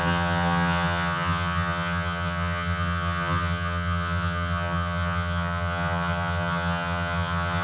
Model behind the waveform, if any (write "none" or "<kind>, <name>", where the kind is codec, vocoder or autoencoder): vocoder, HiFi-GAN